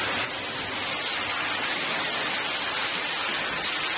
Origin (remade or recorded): recorded